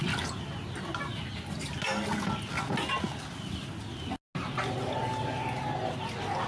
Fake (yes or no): no